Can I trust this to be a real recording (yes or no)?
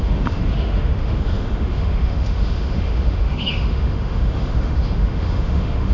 no